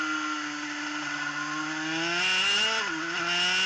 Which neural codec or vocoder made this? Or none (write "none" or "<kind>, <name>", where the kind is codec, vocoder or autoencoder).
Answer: none